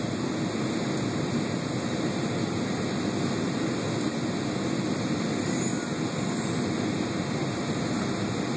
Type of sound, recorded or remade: recorded